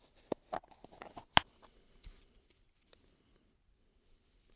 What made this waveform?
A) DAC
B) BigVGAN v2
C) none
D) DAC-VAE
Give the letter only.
C